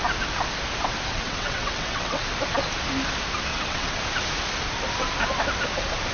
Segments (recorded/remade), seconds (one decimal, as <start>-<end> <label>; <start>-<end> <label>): 0.0-1.1 recorded; 1.1-2.2 remade; 2.2-3.5 recorded; 3.5-4.0 remade; 4.0-6.1 recorded